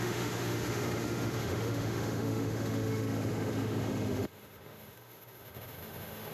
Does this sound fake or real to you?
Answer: fake